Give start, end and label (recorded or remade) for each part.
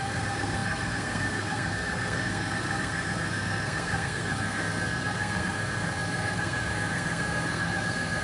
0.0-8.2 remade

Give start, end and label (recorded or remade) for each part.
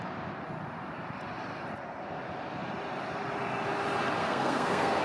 0.0-4.2 recorded; 4.2-5.0 remade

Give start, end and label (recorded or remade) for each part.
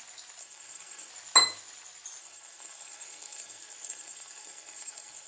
0.0-0.4 recorded; 0.4-1.1 remade; 1.1-2.2 recorded; 2.2-5.3 remade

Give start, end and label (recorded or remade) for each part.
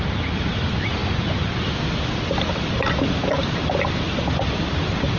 0.0-5.2 recorded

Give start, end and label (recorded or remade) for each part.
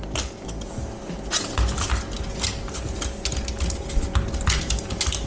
0.0-5.3 recorded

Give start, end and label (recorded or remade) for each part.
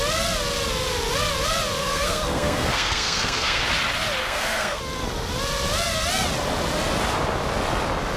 0.0-1.8 recorded; 1.8-3.6 remade; 3.6-4.2 recorded; 4.2-4.8 remade; 4.8-8.2 recorded